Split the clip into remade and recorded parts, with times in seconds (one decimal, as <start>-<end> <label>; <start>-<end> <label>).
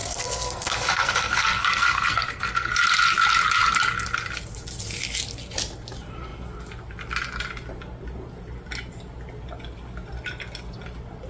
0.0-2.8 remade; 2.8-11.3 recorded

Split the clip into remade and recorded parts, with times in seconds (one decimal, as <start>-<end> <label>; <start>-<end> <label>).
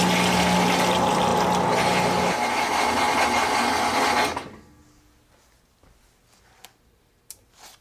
0.0-7.8 recorded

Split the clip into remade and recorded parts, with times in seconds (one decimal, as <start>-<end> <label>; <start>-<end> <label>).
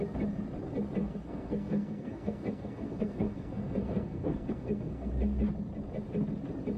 0.0-1.0 recorded; 1.0-5.1 remade; 5.1-6.8 recorded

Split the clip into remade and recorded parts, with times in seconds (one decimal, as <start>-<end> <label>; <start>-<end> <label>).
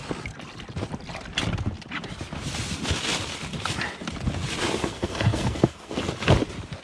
0.0-4.8 recorded; 4.8-6.0 remade; 6.0-6.8 recorded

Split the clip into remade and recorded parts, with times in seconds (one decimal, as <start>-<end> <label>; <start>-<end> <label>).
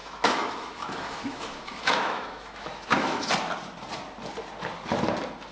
0.0-3.3 remade; 3.3-5.5 recorded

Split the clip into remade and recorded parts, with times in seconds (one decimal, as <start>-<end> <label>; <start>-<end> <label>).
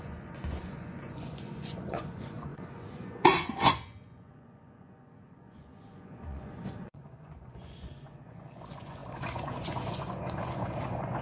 0.0-11.2 remade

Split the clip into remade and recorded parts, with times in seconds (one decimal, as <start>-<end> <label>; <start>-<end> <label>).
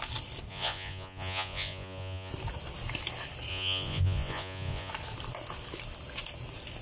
0.0-0.5 recorded; 0.5-2.3 remade; 2.3-3.5 recorded; 3.5-4.9 remade; 4.9-6.8 recorded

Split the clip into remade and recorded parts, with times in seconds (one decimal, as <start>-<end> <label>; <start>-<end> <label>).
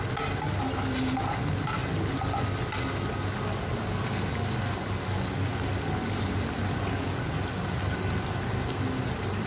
0.0-9.5 recorded